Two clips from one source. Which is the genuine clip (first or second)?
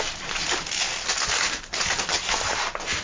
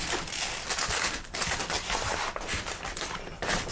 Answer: first